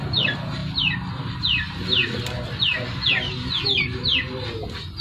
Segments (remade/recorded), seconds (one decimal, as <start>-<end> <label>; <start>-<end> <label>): 0.0-5.0 recorded